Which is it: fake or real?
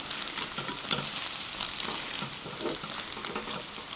real